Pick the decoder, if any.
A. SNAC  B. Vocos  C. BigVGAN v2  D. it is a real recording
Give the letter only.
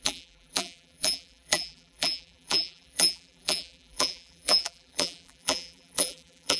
C